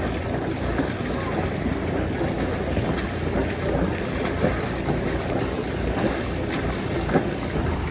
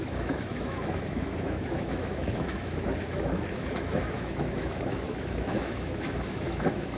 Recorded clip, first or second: first